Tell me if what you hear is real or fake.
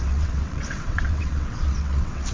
fake